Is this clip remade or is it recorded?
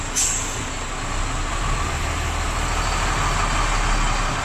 recorded